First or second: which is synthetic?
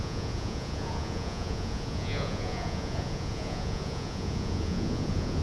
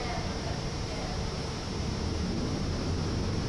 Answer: first